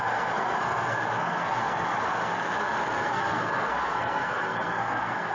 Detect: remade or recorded remade